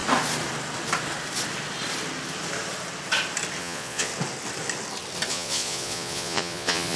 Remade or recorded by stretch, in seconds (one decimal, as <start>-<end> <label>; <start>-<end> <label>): 0.0-3.6 recorded; 3.6-4.1 remade; 4.1-5.3 recorded; 5.3-7.0 remade